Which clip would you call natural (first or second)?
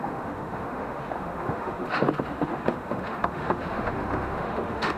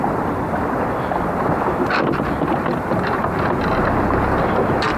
second